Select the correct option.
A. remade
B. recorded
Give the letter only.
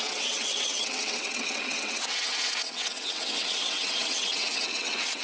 A